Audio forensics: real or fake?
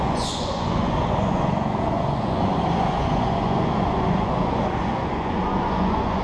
fake